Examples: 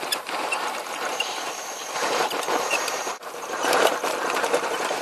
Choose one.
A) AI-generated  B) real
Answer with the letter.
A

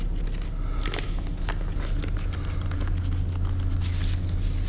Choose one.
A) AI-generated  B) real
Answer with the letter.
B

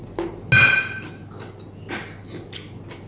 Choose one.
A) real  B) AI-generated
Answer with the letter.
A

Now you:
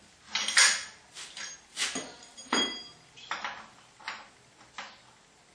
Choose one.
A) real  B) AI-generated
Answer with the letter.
A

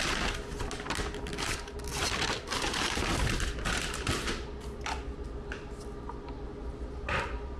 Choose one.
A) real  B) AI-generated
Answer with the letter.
A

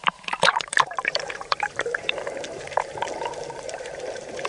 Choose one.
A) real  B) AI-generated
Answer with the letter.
B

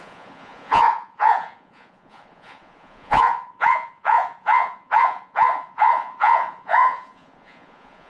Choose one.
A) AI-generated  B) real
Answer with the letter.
A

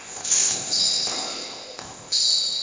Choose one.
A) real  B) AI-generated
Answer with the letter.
B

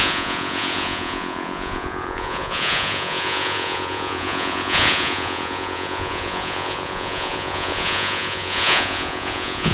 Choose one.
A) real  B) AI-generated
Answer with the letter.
B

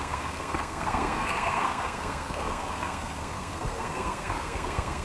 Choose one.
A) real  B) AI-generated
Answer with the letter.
B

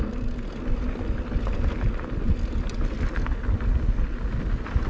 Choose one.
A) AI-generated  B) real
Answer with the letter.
B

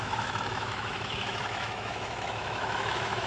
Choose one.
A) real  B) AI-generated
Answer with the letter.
B